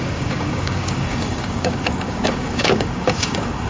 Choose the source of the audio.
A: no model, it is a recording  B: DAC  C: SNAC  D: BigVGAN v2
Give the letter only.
B